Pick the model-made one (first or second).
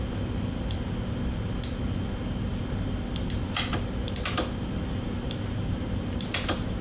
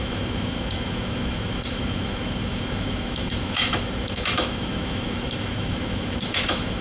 second